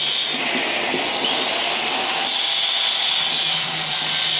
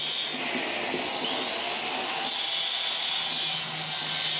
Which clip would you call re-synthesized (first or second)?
first